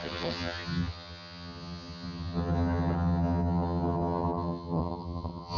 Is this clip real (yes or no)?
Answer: no